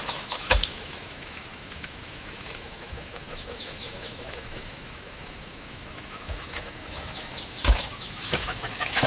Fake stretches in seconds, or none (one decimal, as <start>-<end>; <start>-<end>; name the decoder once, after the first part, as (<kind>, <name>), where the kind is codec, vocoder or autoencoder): 0.0-9.1 (autoencoder, DAC-VAE)